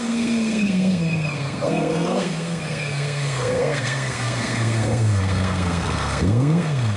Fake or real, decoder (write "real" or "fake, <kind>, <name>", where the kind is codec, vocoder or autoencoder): fake, codec, SNAC